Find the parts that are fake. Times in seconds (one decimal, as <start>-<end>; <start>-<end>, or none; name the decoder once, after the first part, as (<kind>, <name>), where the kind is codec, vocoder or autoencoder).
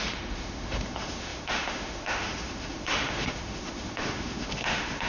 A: 0.0-5.1 (autoencoder, DAC-VAE)